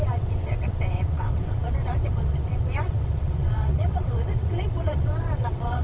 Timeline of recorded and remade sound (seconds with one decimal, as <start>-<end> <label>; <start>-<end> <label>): 0.0-5.8 remade